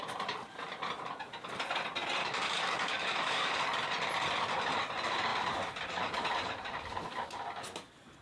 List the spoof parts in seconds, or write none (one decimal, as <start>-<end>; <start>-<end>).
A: 2.2-3.6